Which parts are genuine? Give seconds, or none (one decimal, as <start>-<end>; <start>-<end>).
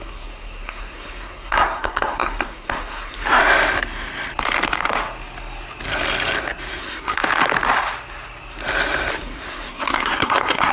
3.4-6.8; 7.2-9.1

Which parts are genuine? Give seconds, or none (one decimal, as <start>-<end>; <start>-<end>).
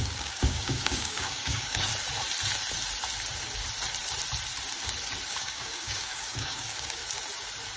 1.9-5.3; 7.0-7.8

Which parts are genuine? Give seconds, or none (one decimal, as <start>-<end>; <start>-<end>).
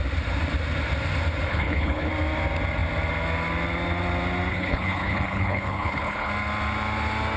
0.0-1.5; 2.1-4.5; 6.3-7.4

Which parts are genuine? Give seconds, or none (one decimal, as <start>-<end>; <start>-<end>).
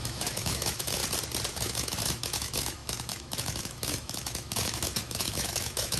1.0-1.5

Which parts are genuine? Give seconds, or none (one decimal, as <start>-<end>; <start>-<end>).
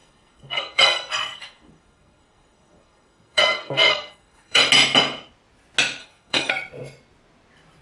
4.6-6.0; 6.5-7.8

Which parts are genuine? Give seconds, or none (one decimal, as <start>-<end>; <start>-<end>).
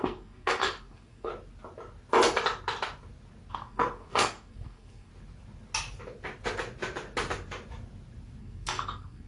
1.3-3.5; 5.1-8.4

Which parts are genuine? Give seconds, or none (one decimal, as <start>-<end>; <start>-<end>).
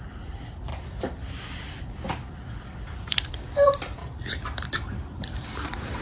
0.7-1.7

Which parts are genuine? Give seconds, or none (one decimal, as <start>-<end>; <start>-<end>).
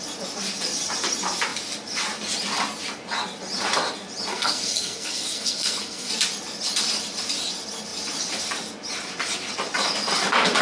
0.0-4.3; 6.1-10.6